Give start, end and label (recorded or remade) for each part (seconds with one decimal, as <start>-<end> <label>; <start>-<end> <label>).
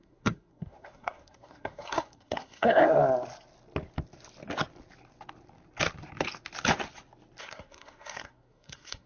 0.0-3.0 remade; 3.0-7.4 recorded; 7.4-9.1 remade